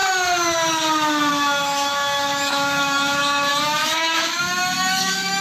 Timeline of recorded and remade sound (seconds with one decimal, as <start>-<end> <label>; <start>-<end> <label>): 0.0-1.3 recorded; 1.3-5.4 remade